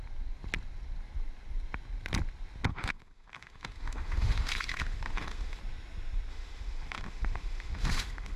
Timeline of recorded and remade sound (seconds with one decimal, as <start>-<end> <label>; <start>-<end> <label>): 0.0-2.7 recorded; 2.7-5.6 remade; 5.6-6.3 recorded; 6.3-8.4 remade